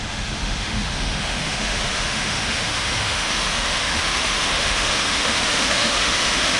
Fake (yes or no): yes